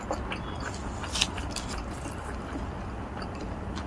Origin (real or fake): real